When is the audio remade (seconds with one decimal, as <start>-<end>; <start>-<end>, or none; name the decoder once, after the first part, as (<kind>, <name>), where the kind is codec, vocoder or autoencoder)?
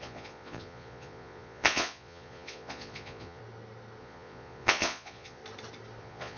0.0-3.4 (vocoder, Vocos); 4.0-5.4; 6.0-6.4